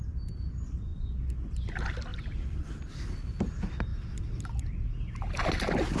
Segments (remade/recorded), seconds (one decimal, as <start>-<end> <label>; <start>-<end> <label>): 0.0-2.1 recorded; 2.1-2.7 remade; 2.7-6.0 recorded